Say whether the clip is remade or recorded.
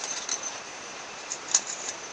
remade